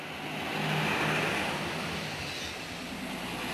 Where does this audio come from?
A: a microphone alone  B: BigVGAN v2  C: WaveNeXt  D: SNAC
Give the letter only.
A